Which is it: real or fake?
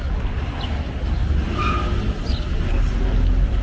real